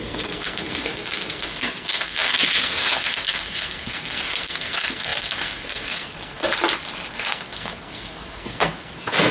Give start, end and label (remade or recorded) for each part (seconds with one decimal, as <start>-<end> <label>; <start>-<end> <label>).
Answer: 0.0-6.4 remade; 6.4-7.1 recorded; 7.1-9.3 remade